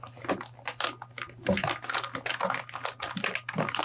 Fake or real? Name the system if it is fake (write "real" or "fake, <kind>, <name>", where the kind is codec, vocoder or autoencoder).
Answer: real